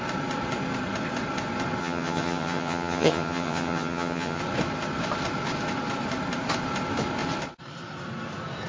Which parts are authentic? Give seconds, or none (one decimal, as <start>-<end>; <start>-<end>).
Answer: 0.0-1.8; 4.4-8.7